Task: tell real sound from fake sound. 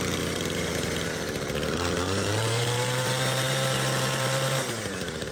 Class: fake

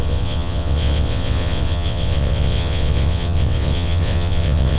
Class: fake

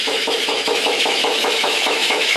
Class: fake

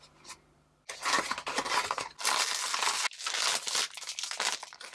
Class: real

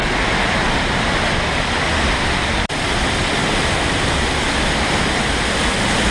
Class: real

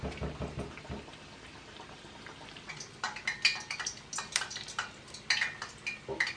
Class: real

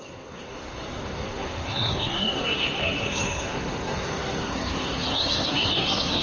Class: fake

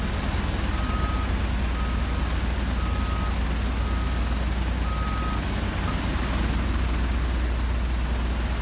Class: real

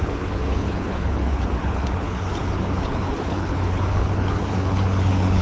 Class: fake